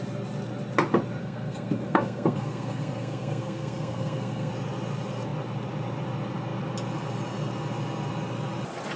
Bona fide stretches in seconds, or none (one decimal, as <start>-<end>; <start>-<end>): 0.0-1.2; 4.5-9.0